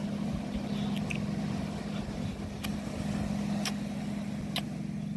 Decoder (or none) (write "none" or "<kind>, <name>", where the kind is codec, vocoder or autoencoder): none